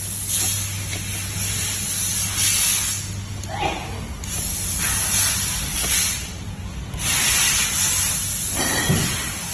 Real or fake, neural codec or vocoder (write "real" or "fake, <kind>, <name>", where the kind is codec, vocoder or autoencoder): real